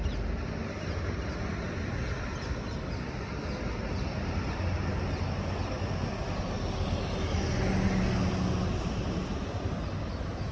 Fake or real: real